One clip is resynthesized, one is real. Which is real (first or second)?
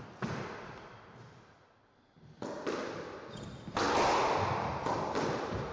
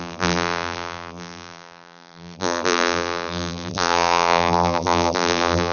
first